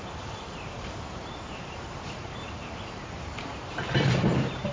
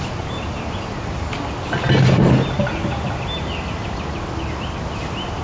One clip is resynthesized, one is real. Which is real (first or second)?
second